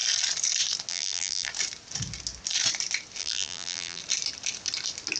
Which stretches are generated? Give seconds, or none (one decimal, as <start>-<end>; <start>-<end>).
0.9-1.5; 3.2-4.0